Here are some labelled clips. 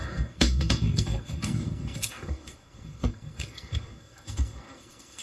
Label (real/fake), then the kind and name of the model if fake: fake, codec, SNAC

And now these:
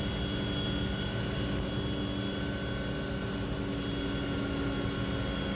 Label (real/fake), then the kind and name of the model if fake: real